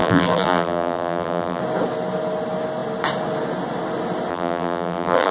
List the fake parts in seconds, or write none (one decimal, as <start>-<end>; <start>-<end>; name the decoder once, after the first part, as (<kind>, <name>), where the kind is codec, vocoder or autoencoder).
0.0-1.6 (vocoder, BigVGAN v2); 4.3-5.3

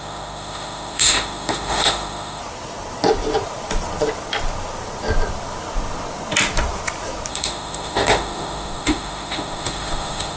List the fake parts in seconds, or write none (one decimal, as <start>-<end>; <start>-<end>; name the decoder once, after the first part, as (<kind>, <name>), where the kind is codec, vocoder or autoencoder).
0.0-2.4 (autoencoder, DAC-VAE); 7.3-10.4

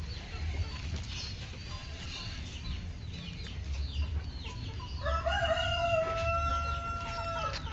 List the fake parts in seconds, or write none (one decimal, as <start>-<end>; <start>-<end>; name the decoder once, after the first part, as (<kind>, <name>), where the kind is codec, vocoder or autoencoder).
1.8-2.4 (vocoder, WaveNeXt)